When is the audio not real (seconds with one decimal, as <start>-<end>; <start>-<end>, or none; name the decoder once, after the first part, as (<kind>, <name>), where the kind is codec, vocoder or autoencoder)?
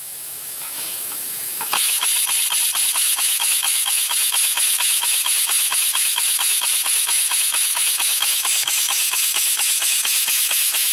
0.0-2.1 (autoencoder, DAC-VAE); 2.9-10.9